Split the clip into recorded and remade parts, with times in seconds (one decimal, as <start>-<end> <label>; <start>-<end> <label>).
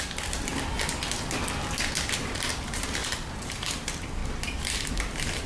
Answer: 0.0-0.5 remade; 0.5-2.0 recorded; 2.0-4.2 remade; 4.2-4.9 recorded; 4.9-5.5 remade